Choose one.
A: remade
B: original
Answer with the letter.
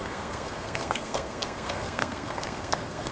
A